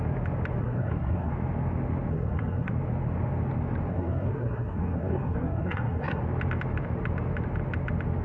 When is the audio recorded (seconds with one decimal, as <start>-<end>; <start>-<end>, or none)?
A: 0.0-0.6; 1.3-2.1; 2.7-3.9; 6.2-8.2